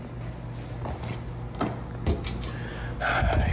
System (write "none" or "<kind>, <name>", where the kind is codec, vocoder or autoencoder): none